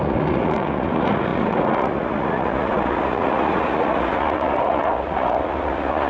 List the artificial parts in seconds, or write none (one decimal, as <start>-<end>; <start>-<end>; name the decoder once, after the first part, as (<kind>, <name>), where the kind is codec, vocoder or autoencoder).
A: 0.0-6.1 (vocoder, Vocos)